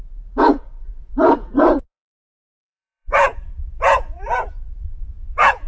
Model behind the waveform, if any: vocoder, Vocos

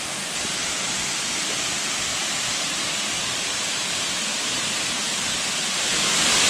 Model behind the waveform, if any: none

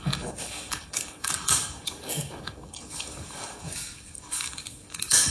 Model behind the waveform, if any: codec, DAC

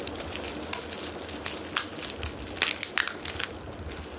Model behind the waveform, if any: none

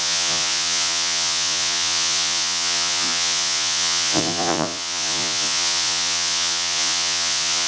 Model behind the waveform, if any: vocoder, Vocos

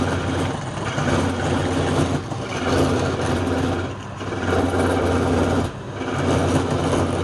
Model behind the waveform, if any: none